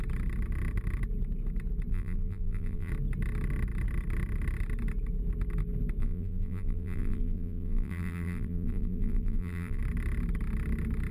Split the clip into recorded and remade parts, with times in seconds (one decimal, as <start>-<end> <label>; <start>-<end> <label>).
0.0-1.9 recorded; 1.9-2.9 remade; 2.9-6.0 recorded; 6.0-9.8 remade; 9.8-11.1 recorded

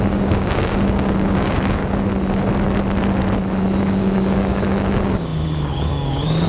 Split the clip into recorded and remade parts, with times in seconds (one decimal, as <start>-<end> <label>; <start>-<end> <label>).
0.0-1.8 remade; 1.8-3.8 recorded; 3.8-6.5 remade

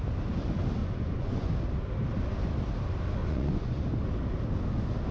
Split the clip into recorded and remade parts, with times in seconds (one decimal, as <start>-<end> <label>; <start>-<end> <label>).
0.0-0.8 recorded; 0.8-1.5 remade; 1.5-3.2 recorded; 3.2-3.8 remade; 3.8-5.1 recorded

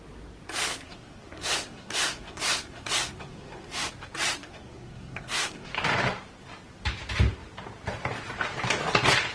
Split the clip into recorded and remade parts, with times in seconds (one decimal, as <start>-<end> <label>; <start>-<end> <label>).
0.0-0.7 recorded; 0.7-3.9 remade; 3.9-4.4 recorded; 4.4-5.7 remade; 5.7-9.3 recorded

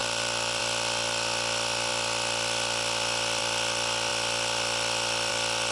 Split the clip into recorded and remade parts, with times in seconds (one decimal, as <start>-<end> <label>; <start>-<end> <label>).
0.0-0.6 remade; 0.6-5.7 recorded

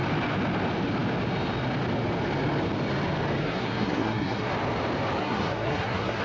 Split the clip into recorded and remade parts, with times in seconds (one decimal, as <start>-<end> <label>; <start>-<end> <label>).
0.0-3.4 recorded; 3.4-4.5 remade; 4.5-5.2 recorded; 5.2-6.2 remade

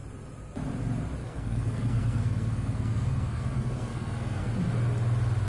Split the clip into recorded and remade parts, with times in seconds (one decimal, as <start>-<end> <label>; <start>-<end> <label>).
0.0-1.2 recorded; 1.2-4.5 remade; 4.5-5.5 recorded

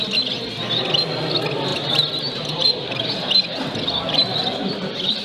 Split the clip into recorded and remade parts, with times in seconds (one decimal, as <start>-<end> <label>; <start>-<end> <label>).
0.0-1.7 recorded; 1.7-3.1 remade; 3.1-5.2 recorded